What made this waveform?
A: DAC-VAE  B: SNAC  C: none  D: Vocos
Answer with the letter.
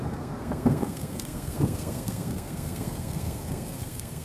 B